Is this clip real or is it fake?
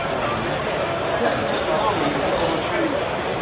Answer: real